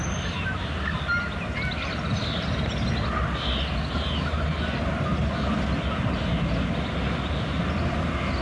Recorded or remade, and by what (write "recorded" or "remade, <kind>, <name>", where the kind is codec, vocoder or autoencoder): recorded